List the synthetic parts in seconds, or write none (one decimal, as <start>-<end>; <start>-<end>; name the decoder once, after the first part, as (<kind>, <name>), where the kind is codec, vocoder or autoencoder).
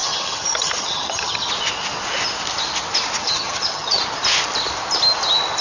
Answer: 0.0-1.5 (vocoder, HiFi-GAN); 3.2-4.0